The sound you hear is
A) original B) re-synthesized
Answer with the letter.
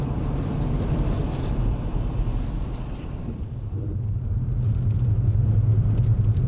A